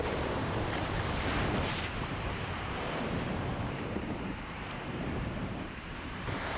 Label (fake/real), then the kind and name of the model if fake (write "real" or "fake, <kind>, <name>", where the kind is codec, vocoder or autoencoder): fake, vocoder, BigVGAN v2